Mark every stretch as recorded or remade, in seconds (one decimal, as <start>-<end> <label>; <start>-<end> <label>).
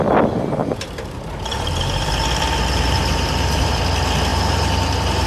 0.0-0.6 recorded; 0.6-3.8 remade; 3.8-4.3 recorded; 4.3-5.3 remade